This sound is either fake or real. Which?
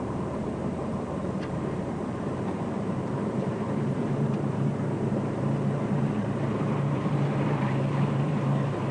fake